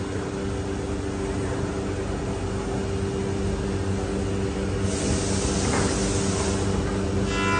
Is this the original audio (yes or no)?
yes